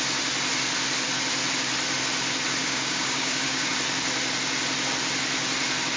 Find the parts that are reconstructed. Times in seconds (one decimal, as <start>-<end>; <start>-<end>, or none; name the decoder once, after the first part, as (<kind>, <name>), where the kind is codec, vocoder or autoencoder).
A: 2.6-3.7 (codec, DAC)